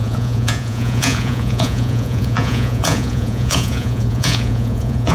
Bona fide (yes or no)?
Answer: no